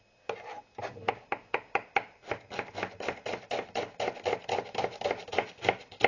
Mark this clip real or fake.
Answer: real